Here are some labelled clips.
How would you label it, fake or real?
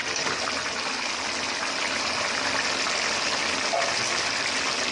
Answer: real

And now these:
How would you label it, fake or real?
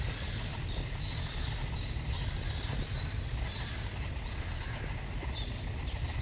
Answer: real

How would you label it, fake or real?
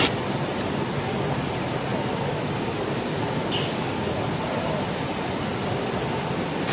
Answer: real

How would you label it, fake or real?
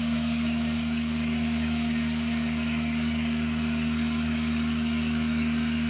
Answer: fake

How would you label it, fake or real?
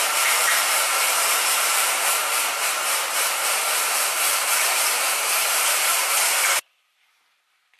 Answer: fake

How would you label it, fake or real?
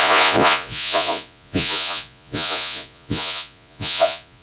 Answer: fake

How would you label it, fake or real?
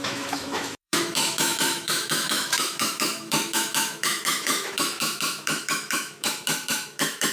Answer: fake